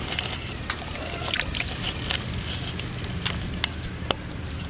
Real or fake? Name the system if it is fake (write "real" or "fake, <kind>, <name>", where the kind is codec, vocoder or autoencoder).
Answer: real